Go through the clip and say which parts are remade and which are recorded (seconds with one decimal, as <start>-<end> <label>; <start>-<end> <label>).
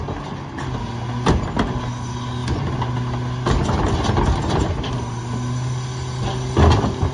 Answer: 0.0-7.1 recorded